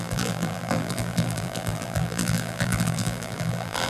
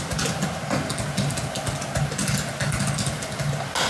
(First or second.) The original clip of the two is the second